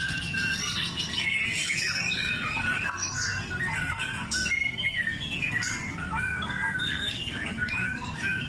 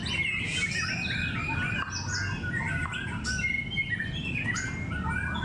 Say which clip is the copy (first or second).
first